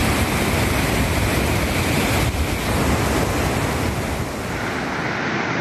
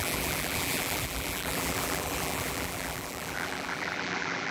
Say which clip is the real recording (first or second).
first